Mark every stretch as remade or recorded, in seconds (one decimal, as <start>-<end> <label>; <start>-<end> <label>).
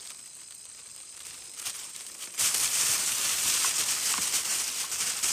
0.0-0.9 recorded; 0.9-3.9 remade; 3.9-5.3 recorded